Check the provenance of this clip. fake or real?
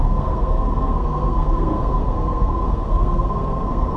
fake